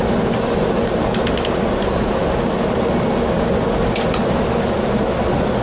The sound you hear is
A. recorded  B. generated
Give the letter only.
A